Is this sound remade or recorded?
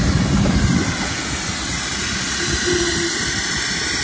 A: recorded